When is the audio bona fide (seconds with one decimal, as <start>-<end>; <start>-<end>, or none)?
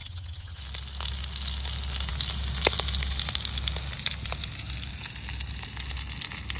0.6-6.6